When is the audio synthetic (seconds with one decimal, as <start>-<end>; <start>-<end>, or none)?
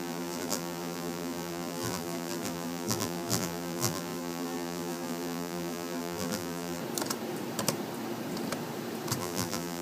0.0-6.8; 9.2-9.8